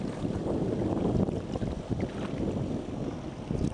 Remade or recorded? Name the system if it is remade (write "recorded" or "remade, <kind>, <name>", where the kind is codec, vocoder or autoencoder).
recorded